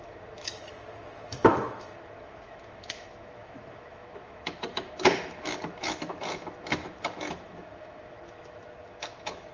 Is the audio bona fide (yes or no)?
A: no